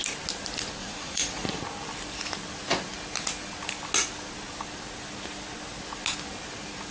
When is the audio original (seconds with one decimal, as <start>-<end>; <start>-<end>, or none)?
0.0-0.8; 1.6-6.9

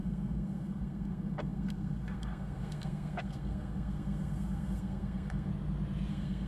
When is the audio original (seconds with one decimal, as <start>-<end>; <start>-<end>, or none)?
5.5-6.1

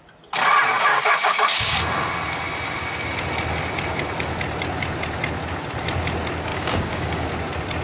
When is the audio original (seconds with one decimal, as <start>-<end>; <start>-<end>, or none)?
0.0-0.9; 1.8-6.5; 7.3-7.8

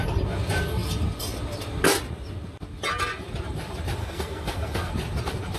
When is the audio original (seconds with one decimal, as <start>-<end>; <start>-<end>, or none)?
0.0-4.0; 4.9-5.6

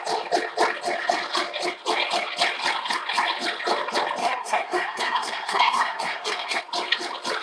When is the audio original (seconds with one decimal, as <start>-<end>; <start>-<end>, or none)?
0.0-4.2; 6.6-7.4

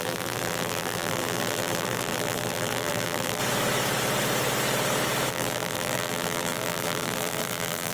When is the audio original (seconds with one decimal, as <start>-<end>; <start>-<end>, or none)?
3.4-5.3